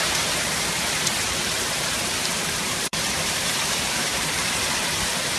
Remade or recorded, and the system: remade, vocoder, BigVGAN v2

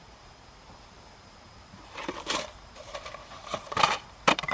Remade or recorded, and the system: remade, vocoder, BigVGAN v2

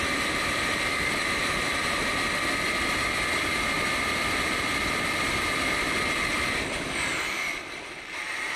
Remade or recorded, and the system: remade, vocoder, BigVGAN v2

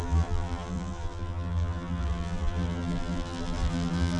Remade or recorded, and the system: remade, vocoder, BigVGAN v2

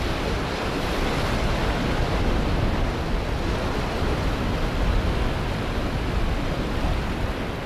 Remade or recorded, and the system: recorded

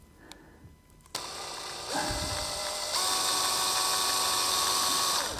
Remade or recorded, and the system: recorded